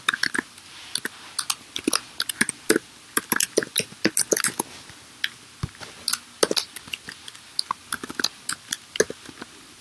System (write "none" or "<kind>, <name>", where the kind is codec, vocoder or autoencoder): none